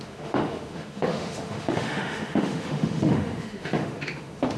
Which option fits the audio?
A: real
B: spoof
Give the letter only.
B